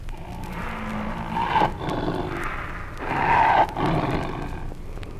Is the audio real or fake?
real